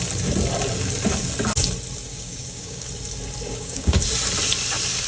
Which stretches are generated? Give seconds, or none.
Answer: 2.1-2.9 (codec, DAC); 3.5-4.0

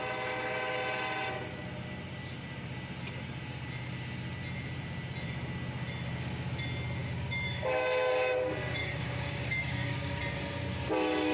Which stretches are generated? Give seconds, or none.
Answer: 7.0-8.1 (codec, DAC); 8.8-10.2

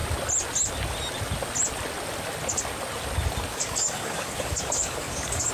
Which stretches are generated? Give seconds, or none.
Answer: 3.5-5.5 (codec, DAC)

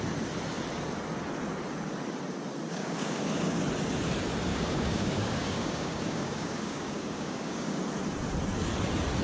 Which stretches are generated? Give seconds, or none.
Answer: 2.7-3.6 (codec, DAC); 4.5-7.8

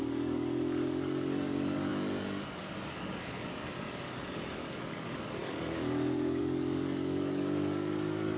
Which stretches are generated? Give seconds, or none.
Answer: 0.0-8.4 (codec, DAC)

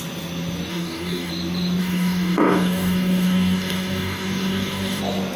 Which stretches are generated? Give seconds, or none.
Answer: 0.7-1.3 (codec, DAC); 1.8-5.0